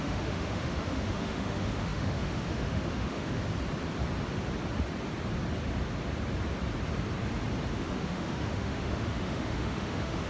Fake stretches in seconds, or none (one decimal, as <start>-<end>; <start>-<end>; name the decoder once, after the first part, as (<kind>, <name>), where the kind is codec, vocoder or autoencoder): 0.0-3.4 (autoencoder, DAC-VAE); 7.7-10.3